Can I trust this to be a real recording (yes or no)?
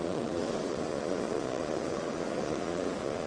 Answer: no